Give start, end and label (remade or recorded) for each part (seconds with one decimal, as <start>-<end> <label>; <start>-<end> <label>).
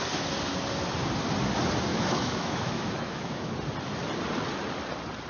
0.0-1.9 recorded; 1.9-3.5 remade; 3.5-5.3 recorded